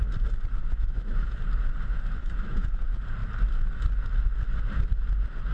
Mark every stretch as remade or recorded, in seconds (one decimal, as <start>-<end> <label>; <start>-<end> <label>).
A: 0.0-0.6 recorded; 0.6-1.4 remade; 1.4-2.2 recorded; 2.2-2.8 remade; 2.8-5.5 recorded